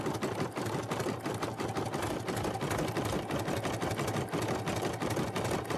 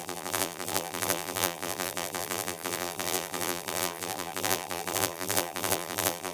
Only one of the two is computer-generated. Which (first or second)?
second